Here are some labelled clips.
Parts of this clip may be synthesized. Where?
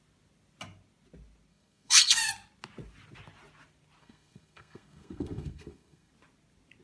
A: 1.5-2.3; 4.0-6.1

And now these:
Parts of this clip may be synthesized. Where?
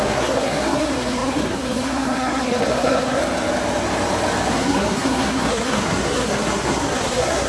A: 0.0-3.2; 4.5-7.5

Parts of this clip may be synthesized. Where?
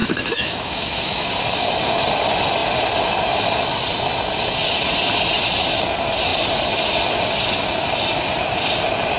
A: 0.0-1.3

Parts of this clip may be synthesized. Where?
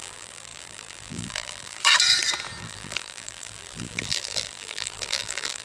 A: 0.0-1.8; 2.6-5.6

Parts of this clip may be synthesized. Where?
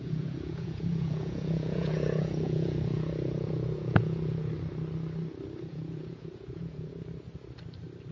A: 0.0-4.5; 5.7-6.9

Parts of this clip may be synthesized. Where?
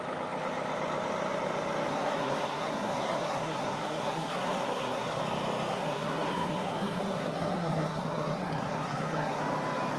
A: 1.9-5.2; 5.7-9.4